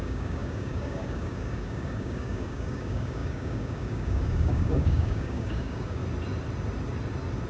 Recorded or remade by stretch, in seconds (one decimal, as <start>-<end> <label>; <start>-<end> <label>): 0.0-6.0 remade; 6.0-7.5 recorded